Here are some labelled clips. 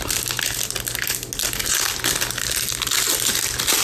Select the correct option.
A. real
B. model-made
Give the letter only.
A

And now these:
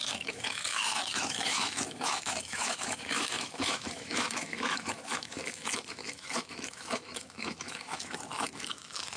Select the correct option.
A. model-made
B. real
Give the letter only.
A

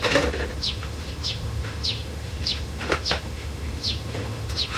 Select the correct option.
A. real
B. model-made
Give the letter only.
B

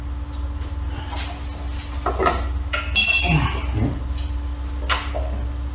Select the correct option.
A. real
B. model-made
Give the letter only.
A